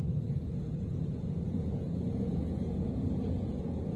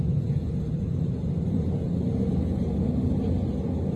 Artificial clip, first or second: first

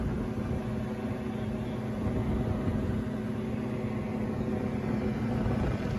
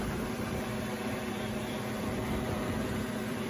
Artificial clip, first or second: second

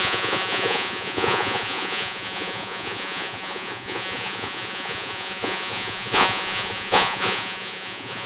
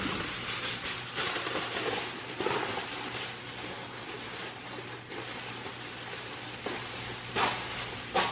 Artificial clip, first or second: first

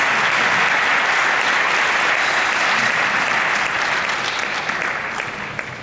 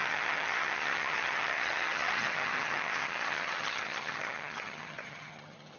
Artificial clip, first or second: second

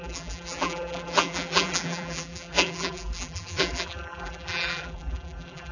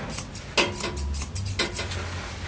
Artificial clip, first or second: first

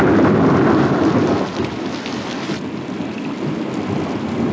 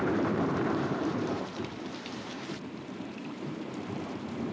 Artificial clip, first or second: second